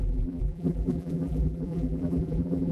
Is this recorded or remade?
remade